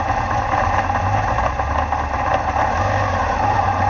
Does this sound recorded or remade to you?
recorded